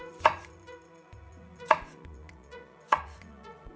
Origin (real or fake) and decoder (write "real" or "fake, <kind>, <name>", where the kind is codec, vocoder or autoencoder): fake, vocoder, Vocos